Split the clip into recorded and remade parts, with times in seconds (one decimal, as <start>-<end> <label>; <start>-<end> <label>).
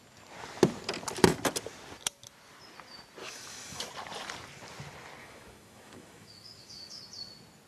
0.0-3.2 recorded; 3.2-3.8 remade; 3.8-5.2 recorded; 5.2-7.0 remade; 7.0-7.7 recorded